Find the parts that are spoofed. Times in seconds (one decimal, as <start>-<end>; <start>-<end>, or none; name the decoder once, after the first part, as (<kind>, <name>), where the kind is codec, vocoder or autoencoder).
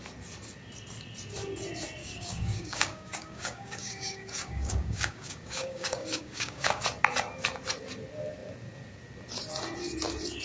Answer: 2.0-6.8 (codec, DAC)